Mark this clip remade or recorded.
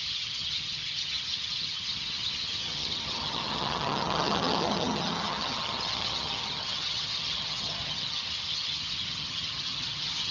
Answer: remade